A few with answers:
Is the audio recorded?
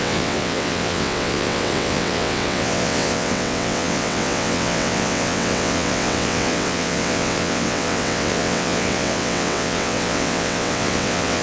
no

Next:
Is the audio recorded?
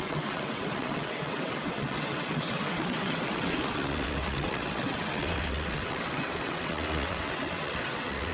no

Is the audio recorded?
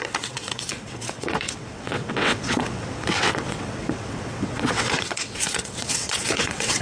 no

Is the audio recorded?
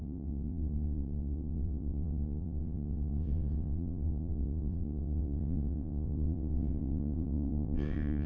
no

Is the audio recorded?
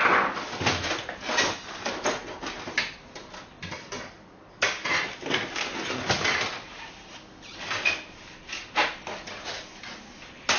yes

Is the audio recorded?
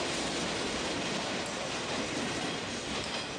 yes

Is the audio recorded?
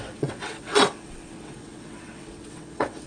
no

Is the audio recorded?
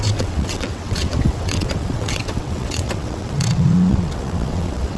no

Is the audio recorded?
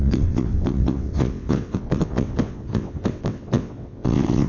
no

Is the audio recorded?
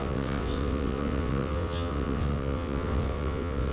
no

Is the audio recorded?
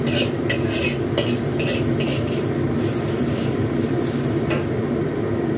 yes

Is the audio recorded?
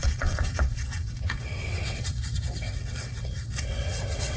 no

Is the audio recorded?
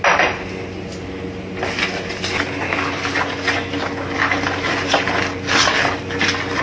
yes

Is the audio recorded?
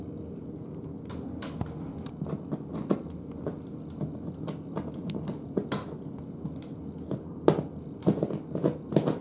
yes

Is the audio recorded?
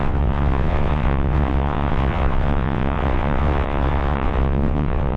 no